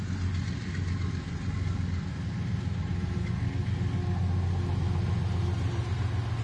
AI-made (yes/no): no